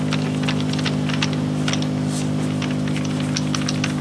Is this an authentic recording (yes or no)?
yes